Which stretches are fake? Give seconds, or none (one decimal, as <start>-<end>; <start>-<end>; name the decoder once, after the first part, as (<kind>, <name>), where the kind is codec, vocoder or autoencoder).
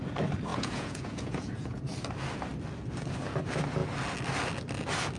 0.5-1.8 (vocoder, Vocos)